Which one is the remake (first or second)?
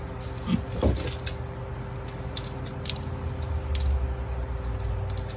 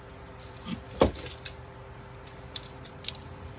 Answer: second